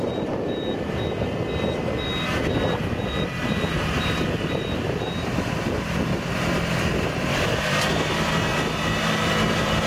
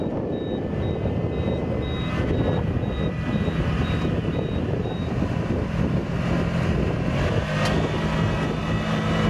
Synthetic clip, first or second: first